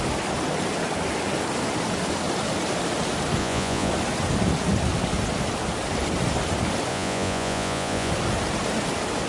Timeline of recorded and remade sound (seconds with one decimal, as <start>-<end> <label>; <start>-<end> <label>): 0.0-3.4 recorded; 3.4-3.9 remade; 3.9-6.9 recorded; 6.9-8.1 remade; 8.1-9.3 recorded